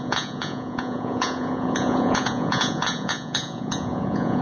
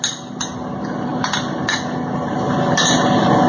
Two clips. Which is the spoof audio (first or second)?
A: first